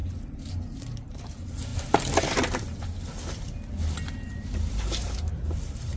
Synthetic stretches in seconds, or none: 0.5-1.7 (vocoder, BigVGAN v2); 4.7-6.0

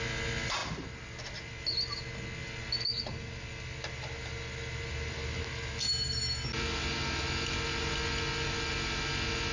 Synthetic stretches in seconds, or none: none

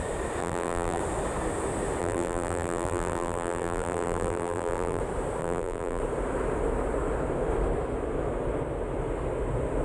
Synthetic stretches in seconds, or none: 0.4-1.0 (vocoder, BigVGAN v2); 2.0-5.0; 5.4-6.0

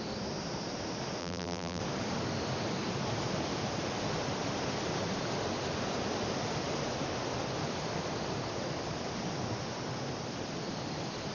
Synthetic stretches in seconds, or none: 1.2-1.8 (vocoder, BigVGAN v2)